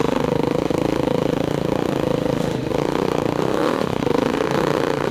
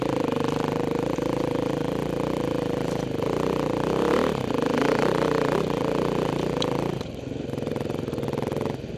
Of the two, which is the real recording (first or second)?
second